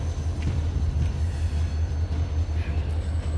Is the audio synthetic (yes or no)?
no